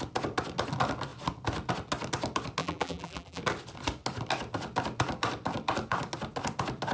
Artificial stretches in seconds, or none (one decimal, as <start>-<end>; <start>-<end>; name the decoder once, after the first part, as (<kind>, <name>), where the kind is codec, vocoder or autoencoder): 2.6-3.4 (vocoder, BigVGAN v2)